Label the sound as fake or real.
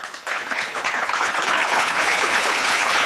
fake